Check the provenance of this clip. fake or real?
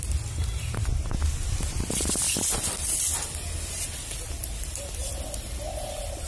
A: real